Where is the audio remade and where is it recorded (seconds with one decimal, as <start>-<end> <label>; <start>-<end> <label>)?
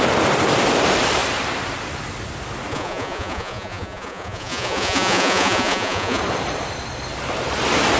0.0-2.7 recorded; 2.7-6.2 remade; 6.2-8.0 recorded